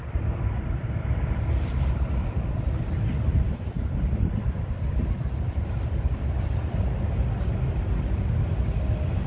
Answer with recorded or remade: recorded